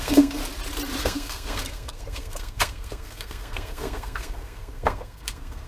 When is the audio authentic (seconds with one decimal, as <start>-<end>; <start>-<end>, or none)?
0.4-1.0